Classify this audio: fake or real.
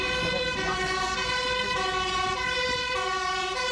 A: fake